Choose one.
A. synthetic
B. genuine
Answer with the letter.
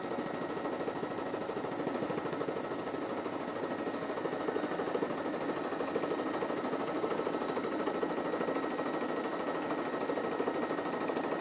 B